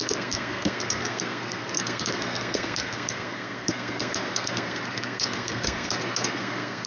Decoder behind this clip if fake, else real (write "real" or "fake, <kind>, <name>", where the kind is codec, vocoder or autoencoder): fake, codec, SNAC